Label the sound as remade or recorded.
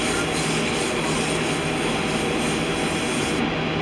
recorded